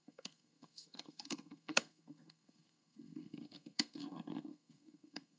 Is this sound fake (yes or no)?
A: yes